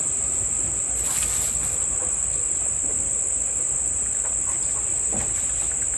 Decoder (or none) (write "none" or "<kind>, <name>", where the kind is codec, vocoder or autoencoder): none